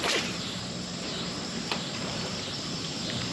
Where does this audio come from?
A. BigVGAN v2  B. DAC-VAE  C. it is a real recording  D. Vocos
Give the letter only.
A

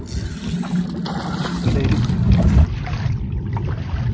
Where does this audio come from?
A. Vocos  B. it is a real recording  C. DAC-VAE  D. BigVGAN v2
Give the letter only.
B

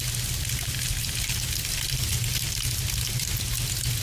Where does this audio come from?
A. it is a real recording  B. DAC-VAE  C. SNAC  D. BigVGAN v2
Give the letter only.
A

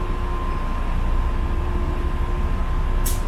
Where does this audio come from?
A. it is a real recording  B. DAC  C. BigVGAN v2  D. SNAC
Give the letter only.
A